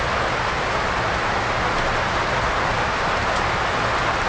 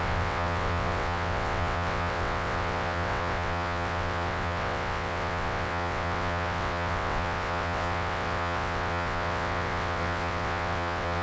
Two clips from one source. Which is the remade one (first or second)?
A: second